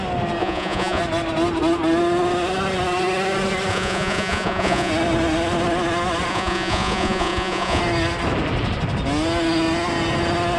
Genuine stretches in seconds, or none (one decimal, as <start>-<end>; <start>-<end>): 0.0-0.4; 1.0-3.7; 4.9-6.3; 7.8-10.6